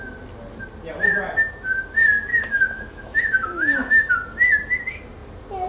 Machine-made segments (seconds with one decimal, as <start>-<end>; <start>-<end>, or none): 2.3-4.1